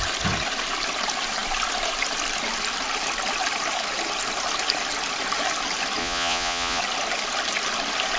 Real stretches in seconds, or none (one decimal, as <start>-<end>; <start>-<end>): 0.0-6.0; 6.8-8.2

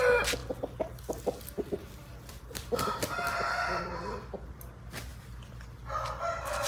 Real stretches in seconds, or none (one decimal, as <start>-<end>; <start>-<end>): 0.0-6.7